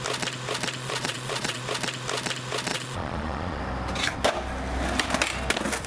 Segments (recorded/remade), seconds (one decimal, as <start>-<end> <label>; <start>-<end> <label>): 0.0-0.8 recorded; 0.8-1.6 remade; 1.6-2.7 recorded; 2.7-3.6 remade; 3.6-5.9 recorded